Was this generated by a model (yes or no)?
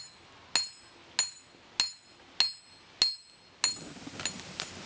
no